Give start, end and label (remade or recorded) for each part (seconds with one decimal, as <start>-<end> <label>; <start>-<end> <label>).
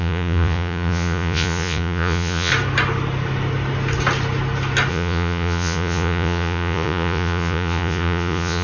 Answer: 0.0-2.5 remade; 2.5-4.9 recorded; 4.9-8.6 remade